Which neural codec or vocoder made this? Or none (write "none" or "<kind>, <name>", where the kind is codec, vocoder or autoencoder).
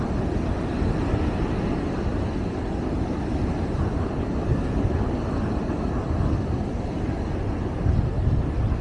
none